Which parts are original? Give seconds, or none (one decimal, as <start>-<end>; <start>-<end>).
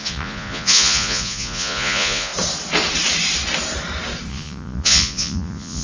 2.3-4.3